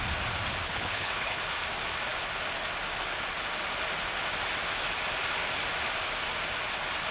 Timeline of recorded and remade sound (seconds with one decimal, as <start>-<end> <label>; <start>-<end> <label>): 0.0-0.6 recorded; 0.6-1.4 remade; 1.4-7.1 recorded